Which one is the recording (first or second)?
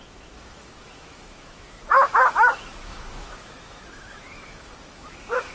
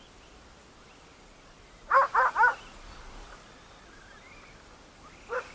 second